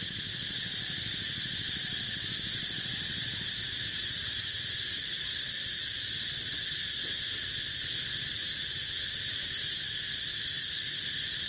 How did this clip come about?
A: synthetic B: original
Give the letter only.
B